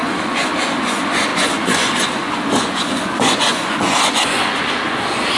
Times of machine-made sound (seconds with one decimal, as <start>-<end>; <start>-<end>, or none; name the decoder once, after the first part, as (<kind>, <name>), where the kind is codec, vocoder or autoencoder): 0.0-5.4 (vocoder, Vocos)

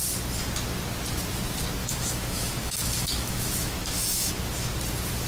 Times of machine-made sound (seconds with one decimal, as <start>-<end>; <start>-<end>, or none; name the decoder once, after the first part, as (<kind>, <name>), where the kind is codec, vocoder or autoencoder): 1.8-4.3 (autoencoder, DAC-VAE)

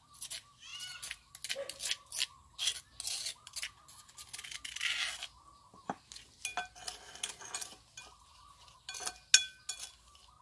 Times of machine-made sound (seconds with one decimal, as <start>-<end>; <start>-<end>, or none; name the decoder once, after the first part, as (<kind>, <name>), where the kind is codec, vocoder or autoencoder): none